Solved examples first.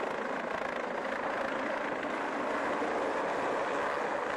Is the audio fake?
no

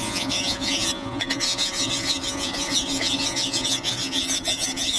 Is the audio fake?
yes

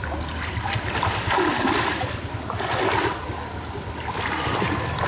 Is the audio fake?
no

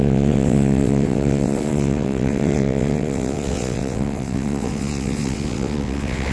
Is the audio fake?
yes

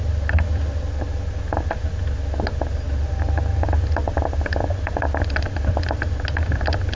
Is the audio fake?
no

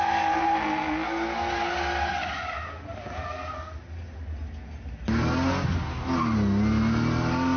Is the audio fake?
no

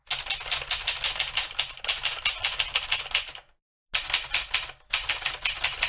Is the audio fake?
no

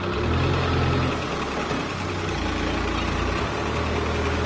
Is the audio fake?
no